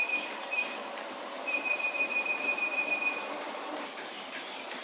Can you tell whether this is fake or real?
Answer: fake